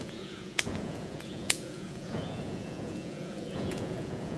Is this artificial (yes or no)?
yes